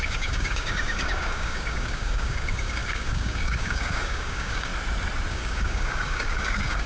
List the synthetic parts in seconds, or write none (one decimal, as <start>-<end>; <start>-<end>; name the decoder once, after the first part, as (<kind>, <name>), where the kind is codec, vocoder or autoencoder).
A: 0.0-4.7 (codec, DAC); 5.3-6.9